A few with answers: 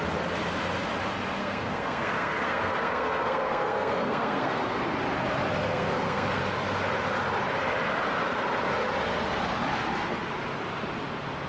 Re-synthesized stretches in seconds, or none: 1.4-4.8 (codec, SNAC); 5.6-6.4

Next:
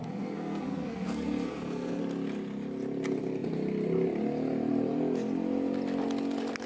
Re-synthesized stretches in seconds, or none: 0.0-2.0 (codec, SNAC)

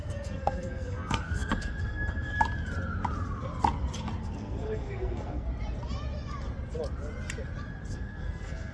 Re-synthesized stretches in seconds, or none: 0.0-2.3 (codec, SNAC); 4.2-5.5; 7.9-8.7